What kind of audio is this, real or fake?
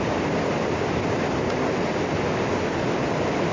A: fake